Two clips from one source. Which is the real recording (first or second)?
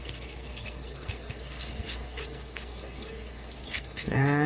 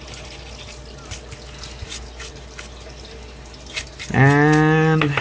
second